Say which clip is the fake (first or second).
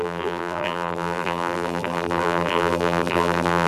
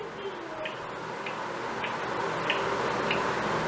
first